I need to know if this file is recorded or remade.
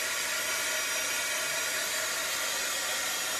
recorded